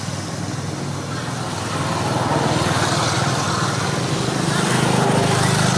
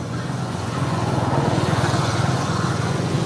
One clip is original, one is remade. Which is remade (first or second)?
second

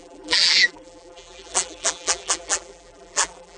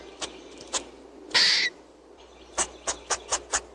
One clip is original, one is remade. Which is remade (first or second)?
first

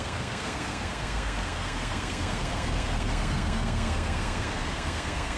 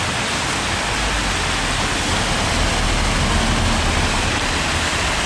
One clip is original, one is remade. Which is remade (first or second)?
first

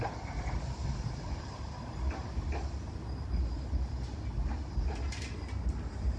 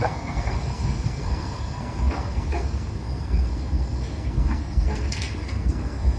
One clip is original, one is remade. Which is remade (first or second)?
second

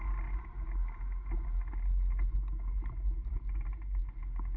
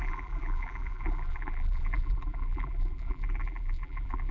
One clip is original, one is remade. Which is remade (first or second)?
second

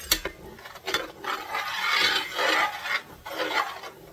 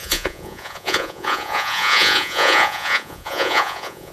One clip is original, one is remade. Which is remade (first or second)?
second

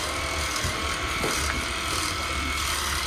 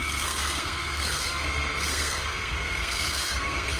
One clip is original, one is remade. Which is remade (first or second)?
second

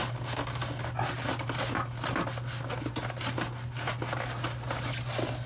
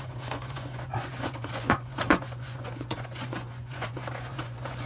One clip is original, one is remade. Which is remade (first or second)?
second